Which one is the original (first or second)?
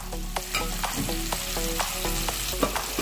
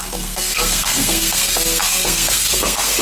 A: first